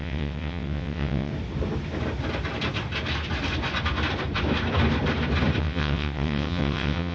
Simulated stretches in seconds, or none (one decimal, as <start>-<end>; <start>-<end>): 0.0-1.3; 5.6-7.1